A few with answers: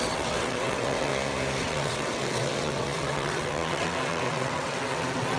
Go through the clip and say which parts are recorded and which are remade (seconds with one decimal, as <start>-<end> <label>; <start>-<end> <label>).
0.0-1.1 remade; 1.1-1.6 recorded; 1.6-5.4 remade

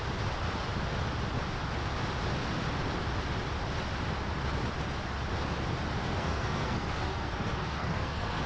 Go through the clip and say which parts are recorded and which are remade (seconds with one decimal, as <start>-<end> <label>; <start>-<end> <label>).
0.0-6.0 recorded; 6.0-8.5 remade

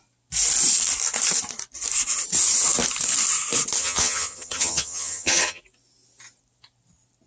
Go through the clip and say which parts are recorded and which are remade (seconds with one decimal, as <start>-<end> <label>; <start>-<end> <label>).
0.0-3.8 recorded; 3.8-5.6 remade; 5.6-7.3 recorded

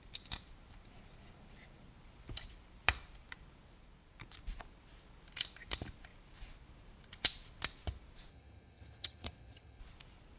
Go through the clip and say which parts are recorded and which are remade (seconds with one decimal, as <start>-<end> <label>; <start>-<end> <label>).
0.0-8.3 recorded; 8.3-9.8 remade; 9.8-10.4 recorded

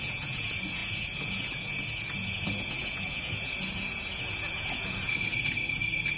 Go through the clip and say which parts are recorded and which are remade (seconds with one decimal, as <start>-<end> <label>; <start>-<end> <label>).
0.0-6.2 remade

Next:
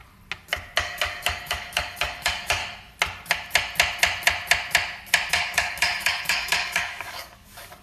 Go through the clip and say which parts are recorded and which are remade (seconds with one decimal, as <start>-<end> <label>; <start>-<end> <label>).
0.0-0.8 recorded; 0.8-2.6 remade; 2.6-5.3 recorded; 5.3-7.8 remade

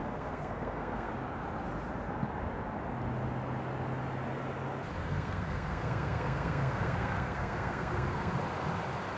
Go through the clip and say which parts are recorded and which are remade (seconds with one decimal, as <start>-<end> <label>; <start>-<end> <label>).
0.0-1.1 remade; 1.1-5.0 recorded; 5.0-8.3 remade; 8.3-9.2 recorded